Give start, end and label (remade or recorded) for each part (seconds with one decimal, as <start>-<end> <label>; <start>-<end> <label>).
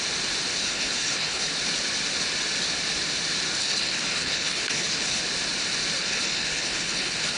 0.0-0.5 recorded; 0.5-1.5 remade; 1.5-3.6 recorded; 3.6-5.2 remade; 5.2-6.0 recorded; 6.0-7.4 remade